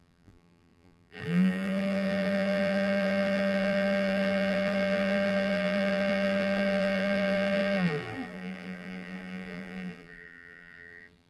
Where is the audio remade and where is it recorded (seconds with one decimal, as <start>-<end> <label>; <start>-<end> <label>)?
0.0-11.3 remade